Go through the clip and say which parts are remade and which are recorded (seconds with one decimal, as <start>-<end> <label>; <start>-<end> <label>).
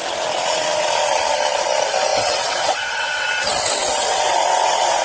0.0-2.1 recorded; 2.1-3.3 remade; 3.3-3.8 recorded; 3.8-5.0 remade